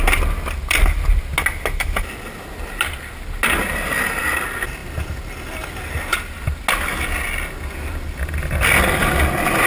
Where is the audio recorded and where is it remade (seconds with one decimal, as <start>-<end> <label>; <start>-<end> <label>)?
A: 0.0-9.7 recorded